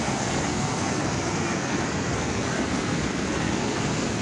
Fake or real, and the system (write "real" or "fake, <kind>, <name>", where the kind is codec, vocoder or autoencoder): fake, codec, SNAC